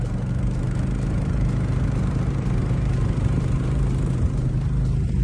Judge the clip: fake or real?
fake